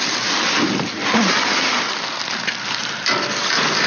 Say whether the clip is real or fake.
real